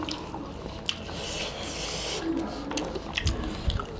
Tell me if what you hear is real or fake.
real